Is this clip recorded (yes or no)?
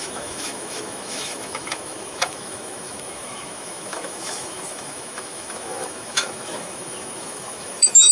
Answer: no